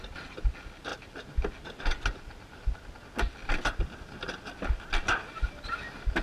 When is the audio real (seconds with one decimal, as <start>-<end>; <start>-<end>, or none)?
0.0-6.2